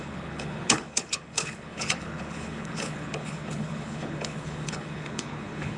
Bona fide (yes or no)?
no